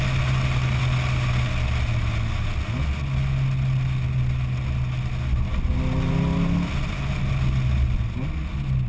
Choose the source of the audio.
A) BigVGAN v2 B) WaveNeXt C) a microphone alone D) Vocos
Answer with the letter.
C